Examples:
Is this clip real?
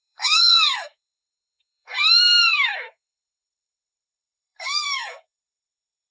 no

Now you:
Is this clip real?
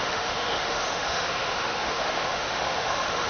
no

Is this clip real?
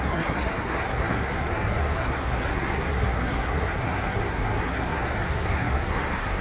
no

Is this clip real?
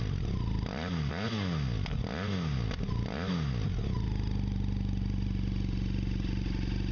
yes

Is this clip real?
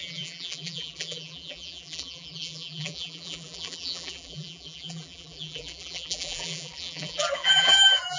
no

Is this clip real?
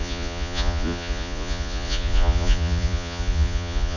no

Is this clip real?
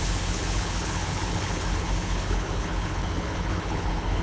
no